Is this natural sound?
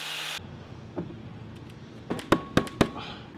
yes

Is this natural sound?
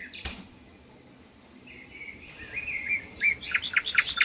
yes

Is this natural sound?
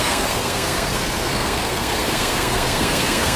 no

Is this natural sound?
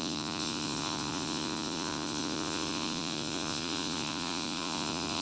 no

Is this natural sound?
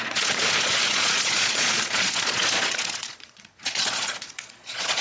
no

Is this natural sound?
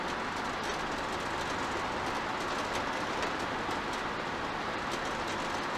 yes